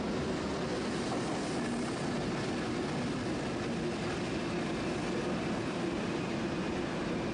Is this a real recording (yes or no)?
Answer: yes